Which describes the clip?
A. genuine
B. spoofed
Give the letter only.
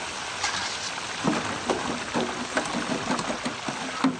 A